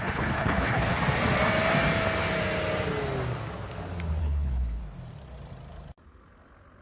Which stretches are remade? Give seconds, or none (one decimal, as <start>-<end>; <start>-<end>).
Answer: 0.0-0.9; 4.2-4.8